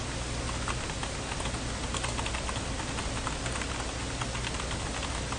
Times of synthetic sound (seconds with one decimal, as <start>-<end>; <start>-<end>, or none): none